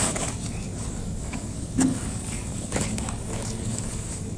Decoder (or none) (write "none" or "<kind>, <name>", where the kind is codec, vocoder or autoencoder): codec, DAC